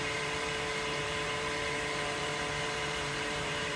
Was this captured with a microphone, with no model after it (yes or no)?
no